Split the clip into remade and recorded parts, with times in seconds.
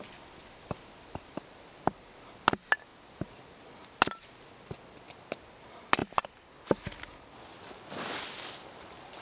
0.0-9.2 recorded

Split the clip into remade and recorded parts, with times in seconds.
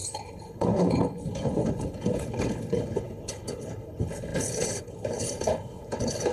0.0-6.3 remade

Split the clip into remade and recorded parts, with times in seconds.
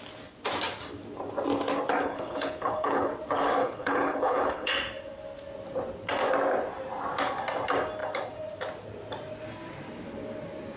0.0-2.0 recorded; 2.0-3.1 remade; 3.1-3.6 recorded; 3.6-4.7 remade; 4.7-10.8 recorded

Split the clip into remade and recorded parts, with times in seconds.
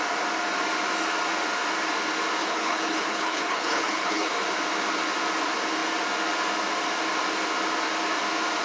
0.0-2.4 recorded; 2.4-4.3 remade; 4.3-8.6 recorded